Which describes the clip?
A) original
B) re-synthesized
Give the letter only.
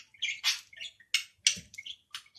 A